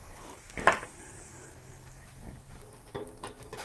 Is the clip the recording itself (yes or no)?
no